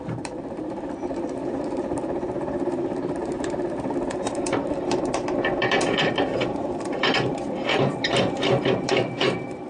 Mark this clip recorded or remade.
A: remade